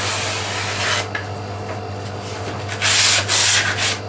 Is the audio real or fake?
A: real